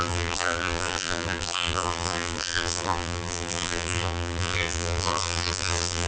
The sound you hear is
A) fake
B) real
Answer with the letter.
A